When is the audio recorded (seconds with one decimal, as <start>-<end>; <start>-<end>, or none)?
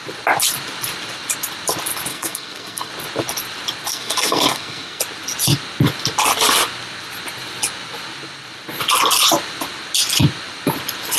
0.0-2.1; 2.9-3.9; 5.0-11.2